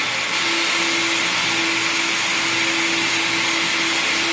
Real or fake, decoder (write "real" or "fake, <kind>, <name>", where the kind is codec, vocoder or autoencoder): real